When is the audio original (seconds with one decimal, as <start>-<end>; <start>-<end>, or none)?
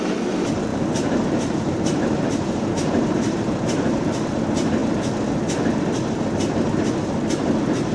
0.0-0.7; 4.3-7.9